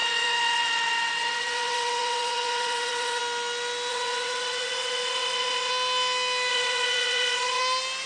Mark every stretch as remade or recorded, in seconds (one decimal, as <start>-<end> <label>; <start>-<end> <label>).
0.0-3.2 remade; 3.2-3.9 recorded; 3.9-5.7 remade; 5.7-6.5 recorded; 6.5-7.6 remade; 7.6-8.1 recorded